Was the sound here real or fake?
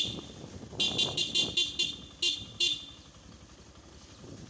real